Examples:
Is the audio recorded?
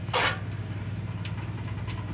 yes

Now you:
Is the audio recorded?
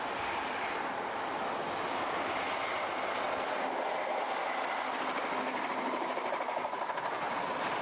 yes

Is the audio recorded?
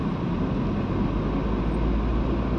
yes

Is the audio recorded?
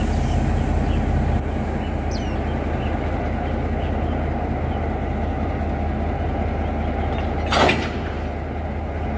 yes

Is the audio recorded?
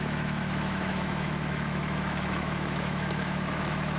no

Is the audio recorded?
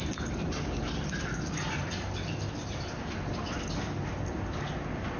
yes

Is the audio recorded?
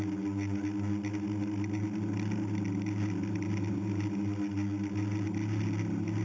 yes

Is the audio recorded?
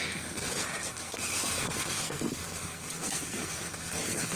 no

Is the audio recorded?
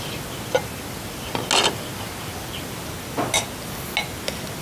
yes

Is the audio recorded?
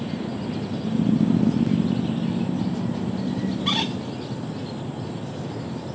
yes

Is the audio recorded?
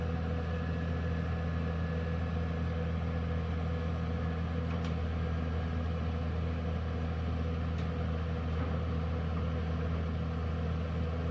yes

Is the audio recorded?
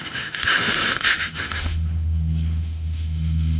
no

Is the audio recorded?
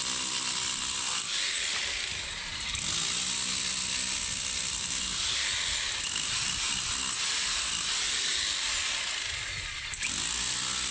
yes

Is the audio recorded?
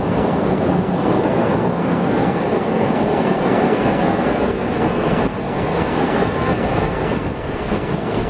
no